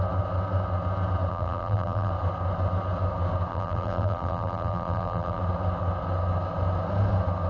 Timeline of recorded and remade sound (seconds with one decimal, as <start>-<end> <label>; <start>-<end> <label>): 0.0-1.3 recorded; 1.3-2.1 remade; 2.1-3.5 recorded; 3.5-5.4 remade; 5.4-7.5 recorded